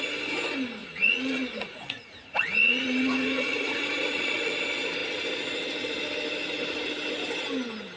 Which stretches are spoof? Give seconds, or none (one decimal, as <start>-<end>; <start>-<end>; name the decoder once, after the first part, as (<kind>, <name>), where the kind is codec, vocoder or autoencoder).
0.8-4.5 (vocoder, Vocos)